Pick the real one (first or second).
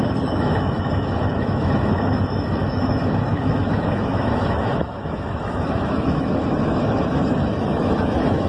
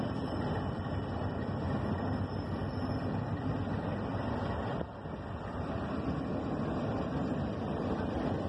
second